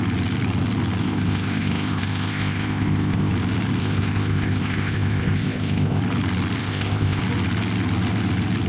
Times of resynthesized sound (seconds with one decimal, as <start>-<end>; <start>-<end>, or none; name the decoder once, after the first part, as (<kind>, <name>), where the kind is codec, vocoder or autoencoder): 1.0-3.3 (codec, ZipCodec); 3.8-6.0; 6.6-7.2